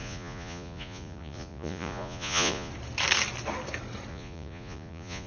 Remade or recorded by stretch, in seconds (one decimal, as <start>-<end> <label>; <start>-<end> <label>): 0.0-2.7 remade; 2.7-4.1 recorded; 4.1-5.3 remade